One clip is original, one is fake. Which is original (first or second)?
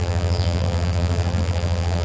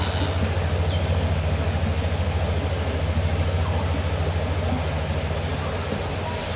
second